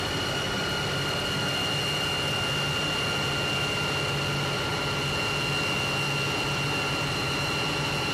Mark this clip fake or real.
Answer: real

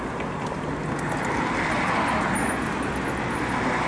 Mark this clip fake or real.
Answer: real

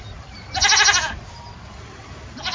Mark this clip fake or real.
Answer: real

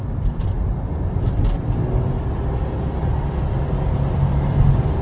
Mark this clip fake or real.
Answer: real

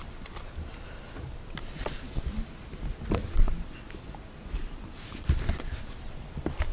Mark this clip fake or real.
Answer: real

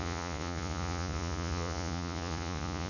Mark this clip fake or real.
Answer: fake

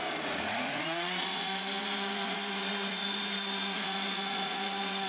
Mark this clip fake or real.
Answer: fake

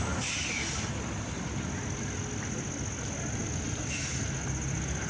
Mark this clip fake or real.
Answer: real